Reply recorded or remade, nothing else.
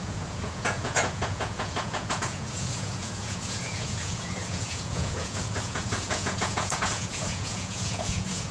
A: remade